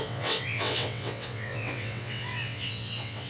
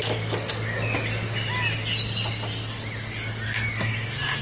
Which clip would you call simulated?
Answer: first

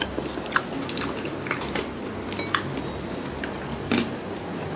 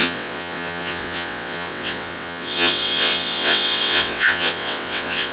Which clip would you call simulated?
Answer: second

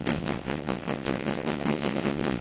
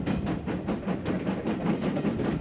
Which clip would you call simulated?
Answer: first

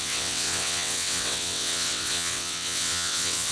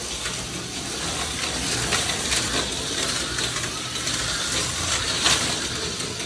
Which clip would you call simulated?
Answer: first